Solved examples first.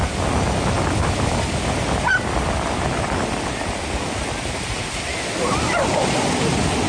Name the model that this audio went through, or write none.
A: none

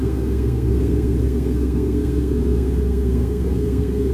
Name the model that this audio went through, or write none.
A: codec, SNAC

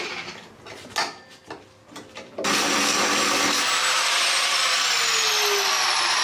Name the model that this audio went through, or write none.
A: none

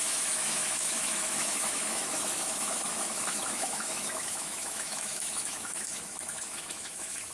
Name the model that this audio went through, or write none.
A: autoencoder, DAC-VAE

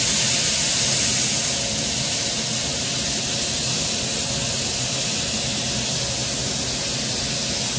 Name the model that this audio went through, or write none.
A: none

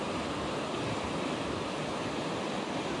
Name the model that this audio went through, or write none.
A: none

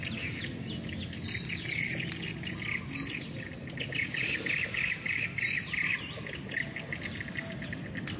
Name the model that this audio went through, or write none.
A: none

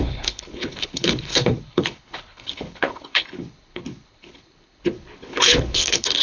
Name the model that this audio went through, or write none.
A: codec, HILCodec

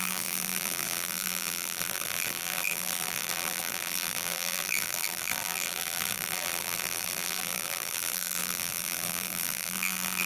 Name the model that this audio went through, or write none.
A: vocoder, BigVGAN v2